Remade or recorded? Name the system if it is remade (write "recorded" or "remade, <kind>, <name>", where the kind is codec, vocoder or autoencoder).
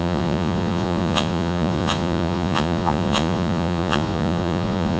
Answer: remade, vocoder, Vocos